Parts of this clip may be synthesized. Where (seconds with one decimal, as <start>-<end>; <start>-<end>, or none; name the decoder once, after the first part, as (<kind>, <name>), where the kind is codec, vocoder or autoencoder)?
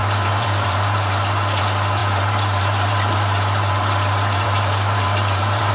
0.0-1.6 (vocoder, BigVGAN v2); 2.0-5.7